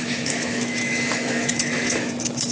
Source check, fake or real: fake